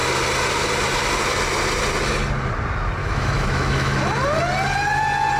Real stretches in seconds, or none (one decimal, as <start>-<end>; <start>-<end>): 0.0-3.0; 4.0-5.4